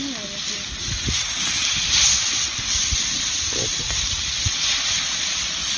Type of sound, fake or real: real